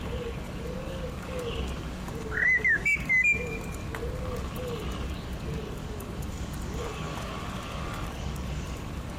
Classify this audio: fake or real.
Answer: fake